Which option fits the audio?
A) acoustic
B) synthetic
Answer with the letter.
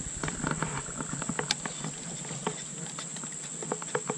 A